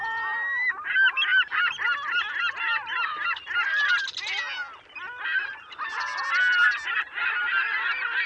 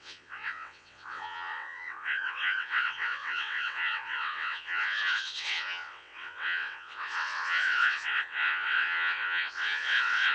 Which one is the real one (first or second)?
first